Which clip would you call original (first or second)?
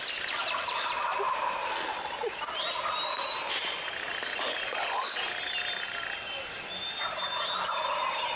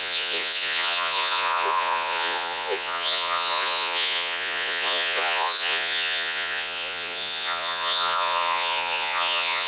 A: first